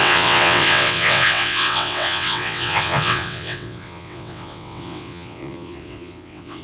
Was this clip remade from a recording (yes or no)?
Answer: yes